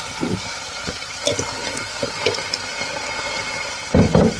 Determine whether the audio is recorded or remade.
recorded